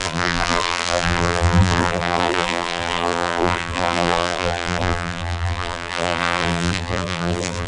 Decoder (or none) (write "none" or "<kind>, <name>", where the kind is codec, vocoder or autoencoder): vocoder, BigVGAN v2